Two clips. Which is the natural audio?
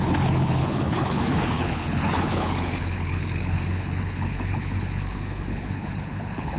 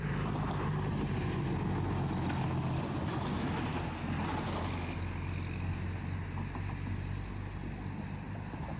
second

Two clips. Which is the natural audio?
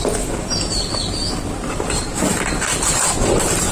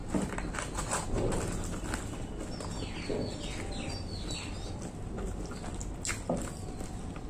second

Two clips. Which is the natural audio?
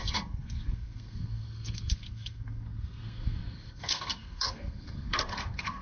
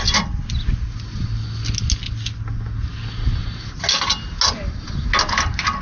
second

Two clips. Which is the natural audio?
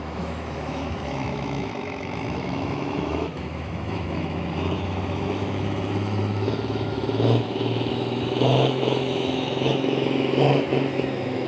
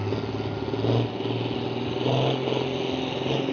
second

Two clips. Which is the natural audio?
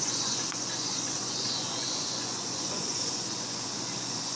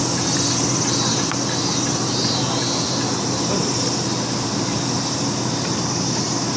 second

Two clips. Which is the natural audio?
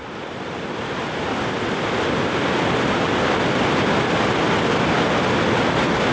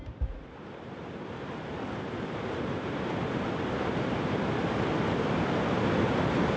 first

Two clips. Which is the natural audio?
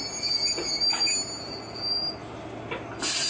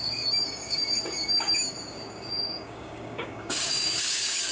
first